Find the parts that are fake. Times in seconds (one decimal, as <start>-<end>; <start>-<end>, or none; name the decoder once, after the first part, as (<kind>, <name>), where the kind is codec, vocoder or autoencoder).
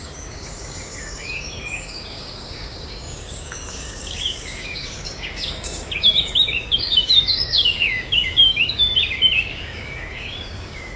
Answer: 0.0-11.0 (codec, DAC)